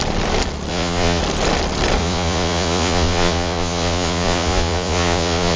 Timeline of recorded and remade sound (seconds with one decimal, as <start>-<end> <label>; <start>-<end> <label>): 0.0-0.7 recorded; 0.7-1.2 remade; 1.2-2.0 recorded; 2.0-5.6 remade